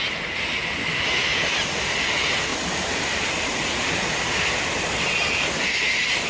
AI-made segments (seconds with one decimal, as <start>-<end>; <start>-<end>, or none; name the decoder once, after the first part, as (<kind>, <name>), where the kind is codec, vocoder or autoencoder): 0.9-1.4 (autoencoder, DAC-VAE)